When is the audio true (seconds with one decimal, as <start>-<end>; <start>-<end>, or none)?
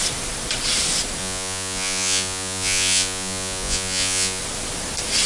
0.0-1.2; 4.4-5.3